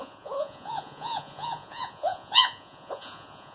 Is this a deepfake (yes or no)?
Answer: yes